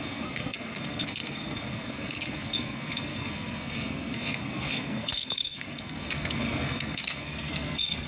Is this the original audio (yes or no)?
no